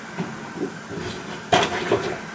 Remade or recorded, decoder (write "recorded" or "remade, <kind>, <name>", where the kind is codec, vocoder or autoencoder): recorded